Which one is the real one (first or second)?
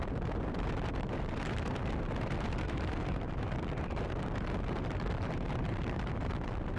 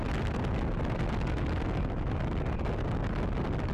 second